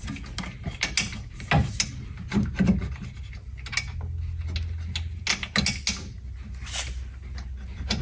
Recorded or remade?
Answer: recorded